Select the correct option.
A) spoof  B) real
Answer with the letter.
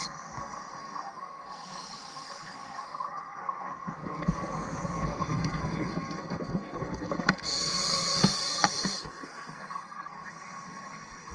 A